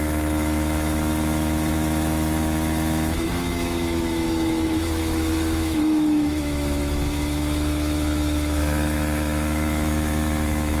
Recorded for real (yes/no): no